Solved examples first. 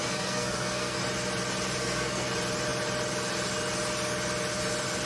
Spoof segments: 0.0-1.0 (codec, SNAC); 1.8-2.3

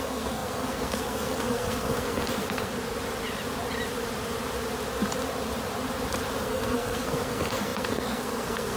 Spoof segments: 0.0-2.7 (codec, SNAC); 6.4-8.8

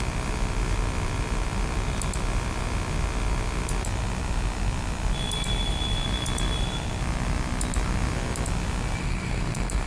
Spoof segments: 9.0-9.9 (codec, SNAC)